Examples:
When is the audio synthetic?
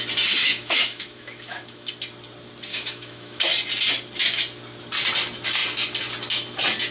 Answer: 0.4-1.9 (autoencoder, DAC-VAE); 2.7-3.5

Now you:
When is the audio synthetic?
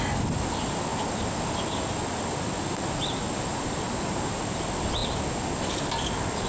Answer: 3.5-4.4 (vocoder, BigVGAN v2)